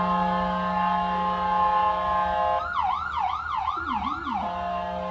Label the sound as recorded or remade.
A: recorded